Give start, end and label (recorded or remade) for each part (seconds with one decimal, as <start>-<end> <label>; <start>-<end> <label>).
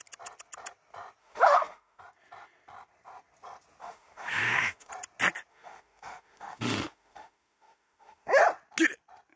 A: 0.0-1.2 recorded; 1.2-2.0 remade; 2.0-3.8 recorded; 3.8-4.9 remade; 4.9-5.5 recorded; 5.5-8.4 remade; 8.4-9.4 recorded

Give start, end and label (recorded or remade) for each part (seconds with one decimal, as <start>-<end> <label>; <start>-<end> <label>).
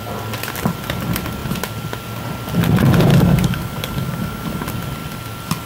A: 0.0-3.1 recorded; 3.1-4.6 remade; 4.6-5.7 recorded